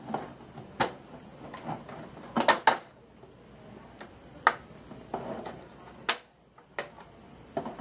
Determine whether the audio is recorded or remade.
recorded